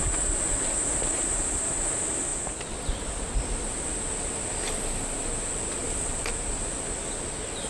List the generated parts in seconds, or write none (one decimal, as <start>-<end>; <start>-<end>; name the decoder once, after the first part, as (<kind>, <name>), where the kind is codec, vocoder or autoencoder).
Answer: 5.8-6.7 (vocoder, BigVGAN v2)